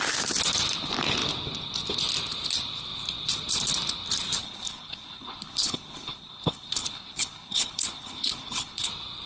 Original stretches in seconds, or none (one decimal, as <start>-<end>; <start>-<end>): 0.0-4.4; 8.9-9.3